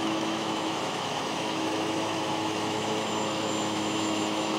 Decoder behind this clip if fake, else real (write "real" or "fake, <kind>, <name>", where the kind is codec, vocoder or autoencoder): fake, autoencoder, DAC-VAE